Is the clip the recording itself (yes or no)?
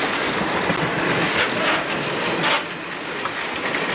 yes